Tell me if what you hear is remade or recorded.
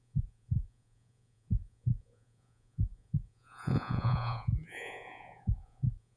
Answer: remade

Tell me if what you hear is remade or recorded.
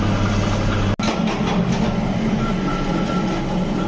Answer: recorded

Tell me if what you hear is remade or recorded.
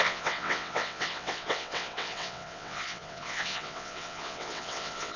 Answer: remade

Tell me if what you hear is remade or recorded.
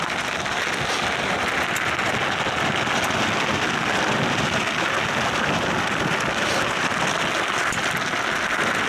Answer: recorded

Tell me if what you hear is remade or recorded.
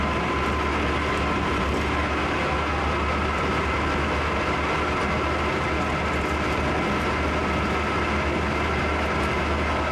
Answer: recorded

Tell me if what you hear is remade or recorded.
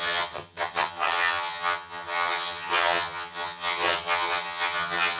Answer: remade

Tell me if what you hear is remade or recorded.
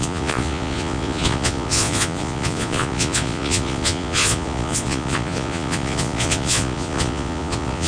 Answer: remade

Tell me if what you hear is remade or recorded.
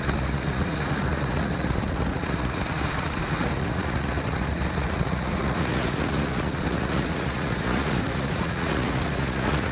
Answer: remade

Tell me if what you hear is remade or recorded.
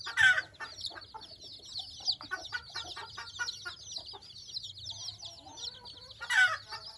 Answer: recorded